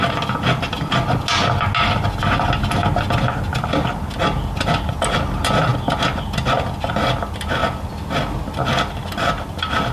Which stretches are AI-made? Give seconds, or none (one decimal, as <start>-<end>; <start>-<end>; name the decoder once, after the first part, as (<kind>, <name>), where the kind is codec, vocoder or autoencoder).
none